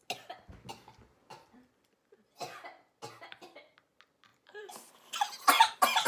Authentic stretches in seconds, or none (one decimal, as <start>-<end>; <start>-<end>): 0.0-4.3; 4.9-6.1